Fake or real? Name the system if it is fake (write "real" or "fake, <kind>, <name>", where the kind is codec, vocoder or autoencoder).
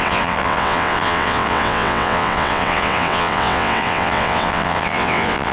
fake, vocoder, WaveNeXt